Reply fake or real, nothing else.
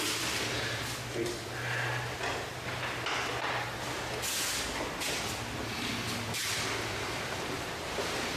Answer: real